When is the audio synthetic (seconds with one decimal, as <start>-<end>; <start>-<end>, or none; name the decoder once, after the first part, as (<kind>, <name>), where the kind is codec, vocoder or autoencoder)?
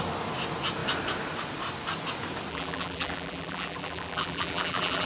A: 2.5-5.1 (vocoder, BigVGAN v2)